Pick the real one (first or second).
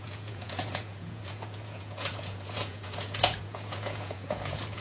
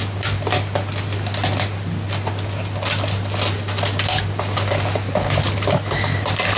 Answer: second